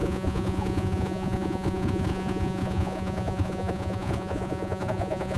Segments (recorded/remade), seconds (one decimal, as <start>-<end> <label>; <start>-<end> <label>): 0.0-5.4 remade